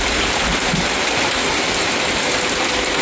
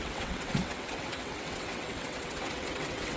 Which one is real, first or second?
first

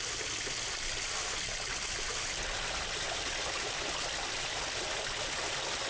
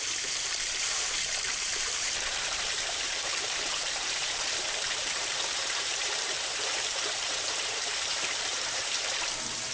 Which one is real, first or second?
first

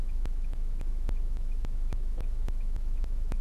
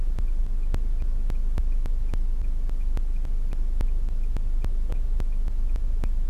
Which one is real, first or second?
second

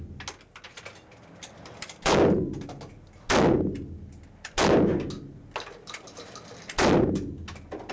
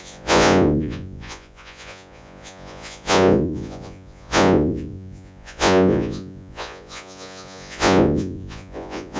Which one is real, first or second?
first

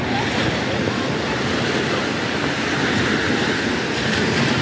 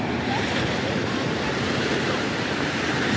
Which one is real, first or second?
first